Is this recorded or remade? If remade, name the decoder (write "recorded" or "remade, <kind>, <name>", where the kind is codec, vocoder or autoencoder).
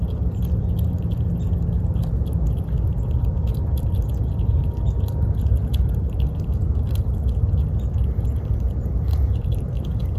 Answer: recorded